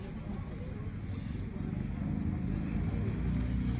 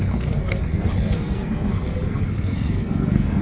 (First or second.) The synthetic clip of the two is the second